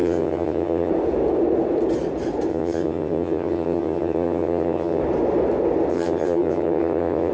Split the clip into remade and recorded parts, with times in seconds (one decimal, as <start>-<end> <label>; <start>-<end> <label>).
0.0-0.9 remade; 0.9-2.5 recorded; 2.5-5.0 remade; 5.0-5.9 recorded; 5.9-7.3 remade